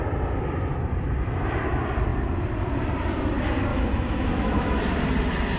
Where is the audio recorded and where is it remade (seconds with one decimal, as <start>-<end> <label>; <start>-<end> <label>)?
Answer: 0.0-3.7 recorded; 3.7-4.8 remade; 4.8-5.6 recorded